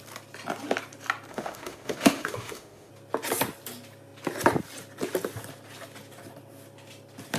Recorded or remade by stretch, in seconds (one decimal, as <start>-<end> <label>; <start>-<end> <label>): 0.0-1.3 recorded; 1.3-2.9 remade; 2.9-7.4 recorded